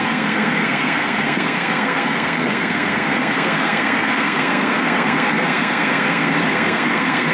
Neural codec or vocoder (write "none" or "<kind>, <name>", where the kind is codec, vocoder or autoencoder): codec, SNAC